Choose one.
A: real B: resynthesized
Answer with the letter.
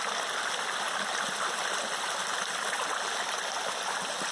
A